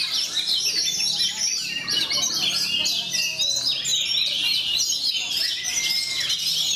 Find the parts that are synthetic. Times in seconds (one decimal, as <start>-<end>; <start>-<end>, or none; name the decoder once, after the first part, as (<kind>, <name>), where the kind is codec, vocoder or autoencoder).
none